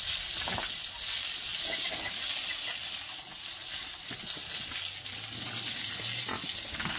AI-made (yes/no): no